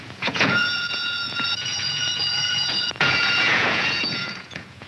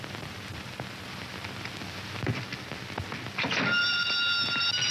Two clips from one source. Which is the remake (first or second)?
first